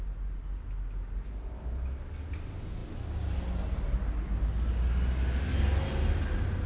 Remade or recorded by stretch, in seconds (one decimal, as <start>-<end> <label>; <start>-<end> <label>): 0.0-6.7 recorded